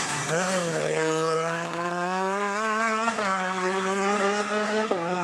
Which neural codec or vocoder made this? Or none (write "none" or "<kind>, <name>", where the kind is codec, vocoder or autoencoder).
codec, SNAC